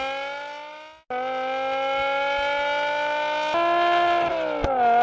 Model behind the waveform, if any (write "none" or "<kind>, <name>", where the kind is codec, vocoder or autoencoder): none